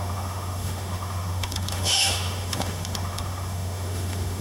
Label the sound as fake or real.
fake